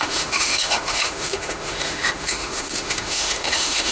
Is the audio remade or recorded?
remade